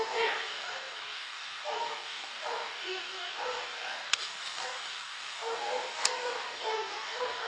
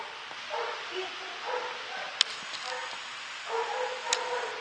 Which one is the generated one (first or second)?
first